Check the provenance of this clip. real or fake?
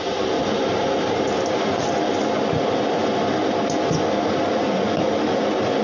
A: real